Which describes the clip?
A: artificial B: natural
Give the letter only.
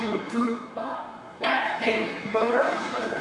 A